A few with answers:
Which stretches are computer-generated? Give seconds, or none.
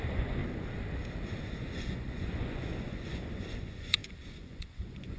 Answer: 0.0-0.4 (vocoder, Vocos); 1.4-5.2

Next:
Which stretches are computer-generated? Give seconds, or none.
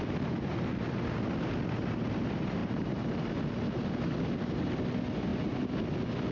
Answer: 2.6-3.4 (vocoder, BigVGAN v2)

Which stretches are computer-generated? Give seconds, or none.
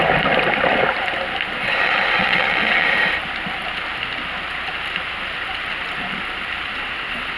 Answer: 1.6-2.9 (vocoder, WaveNeXt); 6.7-7.4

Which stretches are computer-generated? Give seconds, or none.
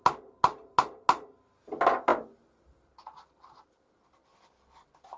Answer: none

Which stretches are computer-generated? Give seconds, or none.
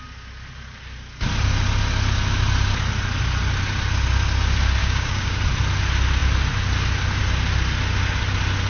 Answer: 4.8-5.4 (codec, DAC)